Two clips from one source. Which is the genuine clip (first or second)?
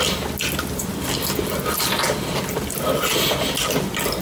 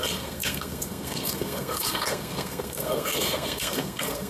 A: first